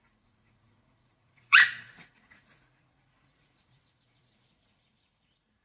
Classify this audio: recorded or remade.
remade